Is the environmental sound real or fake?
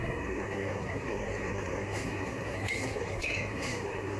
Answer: fake